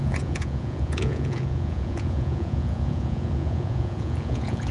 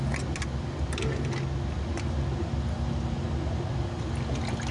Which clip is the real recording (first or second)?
second